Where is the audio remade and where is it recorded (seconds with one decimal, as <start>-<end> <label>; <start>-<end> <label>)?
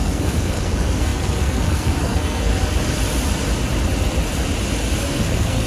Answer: 0.0-2.5 remade; 2.5-5.0 recorded; 5.0-5.7 remade